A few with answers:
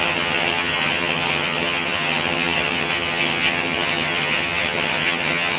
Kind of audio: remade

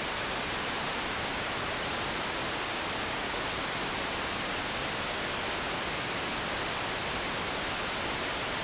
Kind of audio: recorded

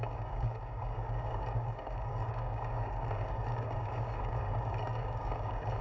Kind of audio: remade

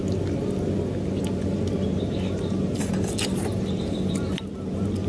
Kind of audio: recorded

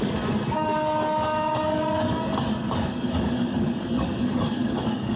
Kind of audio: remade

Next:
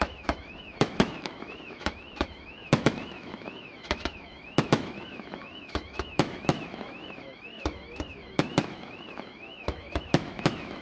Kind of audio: remade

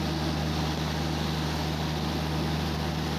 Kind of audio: recorded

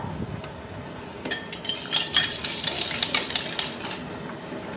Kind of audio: recorded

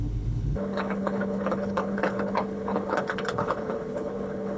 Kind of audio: remade